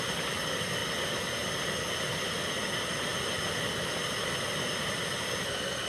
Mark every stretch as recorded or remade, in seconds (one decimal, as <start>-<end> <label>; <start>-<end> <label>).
0.0-5.9 recorded

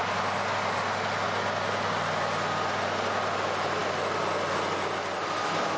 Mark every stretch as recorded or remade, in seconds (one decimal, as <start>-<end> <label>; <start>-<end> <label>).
0.0-5.8 recorded